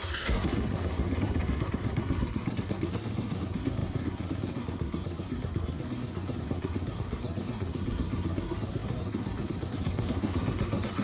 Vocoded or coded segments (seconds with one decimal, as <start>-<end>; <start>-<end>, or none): 0.0-11.0